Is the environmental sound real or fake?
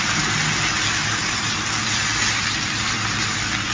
real